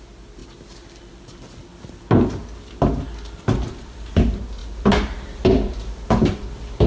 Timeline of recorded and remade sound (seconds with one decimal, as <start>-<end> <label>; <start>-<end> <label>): 0.0-6.9 recorded